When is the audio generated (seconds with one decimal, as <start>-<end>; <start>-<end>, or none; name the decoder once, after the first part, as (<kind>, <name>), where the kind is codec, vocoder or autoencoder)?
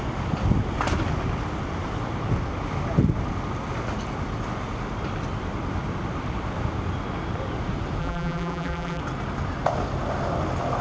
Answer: 8.0-9.0 (vocoder, BigVGAN v2)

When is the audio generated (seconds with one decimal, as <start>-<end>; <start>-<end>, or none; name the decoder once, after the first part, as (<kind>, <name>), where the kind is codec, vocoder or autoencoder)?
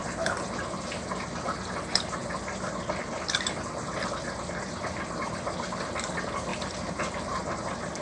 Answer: 6.5-8.0 (vocoder, BigVGAN v2)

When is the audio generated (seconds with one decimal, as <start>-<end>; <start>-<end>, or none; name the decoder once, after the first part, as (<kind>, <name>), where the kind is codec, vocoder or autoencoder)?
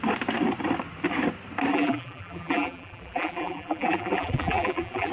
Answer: 1.7-5.1 (vocoder, BigVGAN v2)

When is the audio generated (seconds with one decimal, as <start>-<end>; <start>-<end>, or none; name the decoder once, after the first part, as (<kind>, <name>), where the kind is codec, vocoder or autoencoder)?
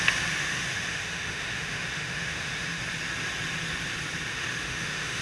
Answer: 0.4-2.8 (autoencoder, DAC-VAE); 4.3-5.2